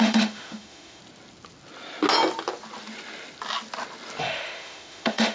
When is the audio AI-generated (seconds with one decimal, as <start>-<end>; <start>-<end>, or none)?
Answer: 0.0-1.0; 4.2-5.3

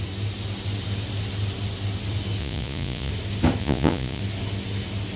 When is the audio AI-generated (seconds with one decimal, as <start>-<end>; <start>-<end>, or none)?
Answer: 2.4-3.1; 3.6-4.2

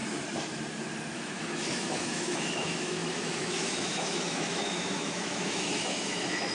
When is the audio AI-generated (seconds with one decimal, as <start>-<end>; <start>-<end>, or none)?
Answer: 1.1-6.5

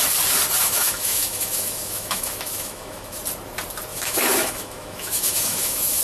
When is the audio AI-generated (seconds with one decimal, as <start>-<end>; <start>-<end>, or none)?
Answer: 0.6-3.2; 3.9-6.0

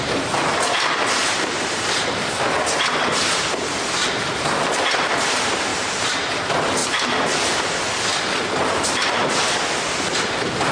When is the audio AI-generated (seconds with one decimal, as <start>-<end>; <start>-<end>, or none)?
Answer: 5.7-6.3; 6.8-7.6; 8.1-9.5